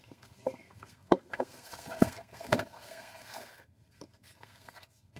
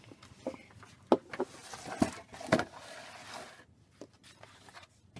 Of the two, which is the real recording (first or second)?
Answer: second